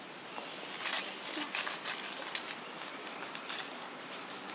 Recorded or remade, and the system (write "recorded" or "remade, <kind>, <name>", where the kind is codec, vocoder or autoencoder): recorded